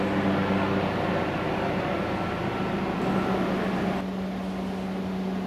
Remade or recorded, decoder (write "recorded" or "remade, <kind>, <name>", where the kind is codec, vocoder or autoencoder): recorded